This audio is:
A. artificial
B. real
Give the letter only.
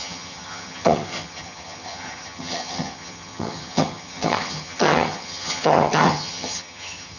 A